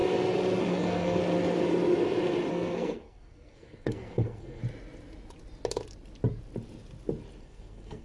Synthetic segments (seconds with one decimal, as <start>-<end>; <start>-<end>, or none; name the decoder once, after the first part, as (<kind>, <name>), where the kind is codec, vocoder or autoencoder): 0.6-1.2 (codec, SNAC); 2.5-4.6; 7.4-8.0